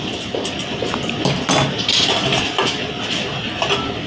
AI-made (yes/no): no